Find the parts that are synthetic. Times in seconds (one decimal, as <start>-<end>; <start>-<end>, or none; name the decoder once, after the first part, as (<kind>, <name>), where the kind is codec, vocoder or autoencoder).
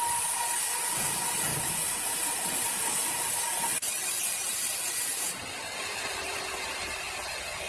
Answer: none